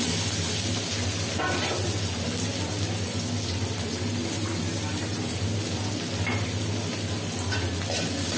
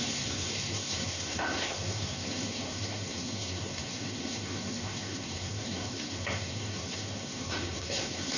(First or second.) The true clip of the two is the first